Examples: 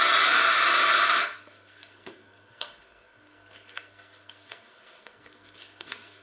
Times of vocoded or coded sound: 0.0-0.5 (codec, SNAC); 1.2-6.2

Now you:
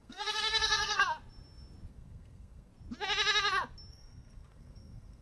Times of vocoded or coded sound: 0.0-1.0 (codec, SNAC); 1.9-2.7; 3.9-5.2